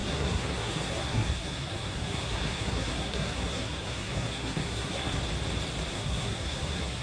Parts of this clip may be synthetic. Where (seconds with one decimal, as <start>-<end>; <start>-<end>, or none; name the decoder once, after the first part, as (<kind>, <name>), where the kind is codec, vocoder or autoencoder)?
0.0-5.2 (codec, SNAC); 5.9-7.0